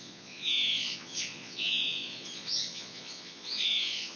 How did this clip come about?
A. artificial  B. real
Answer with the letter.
A